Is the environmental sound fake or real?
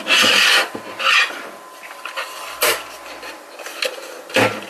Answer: real